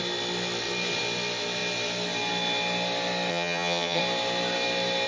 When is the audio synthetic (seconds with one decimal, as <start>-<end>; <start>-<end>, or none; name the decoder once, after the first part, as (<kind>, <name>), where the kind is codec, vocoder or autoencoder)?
3.3-4.0 (vocoder, HiFi-GAN)